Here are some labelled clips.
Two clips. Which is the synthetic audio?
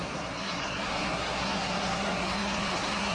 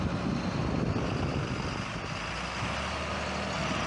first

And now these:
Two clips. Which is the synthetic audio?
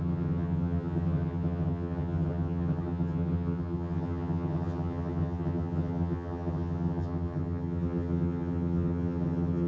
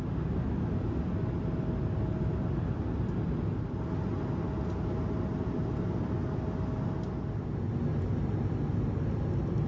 first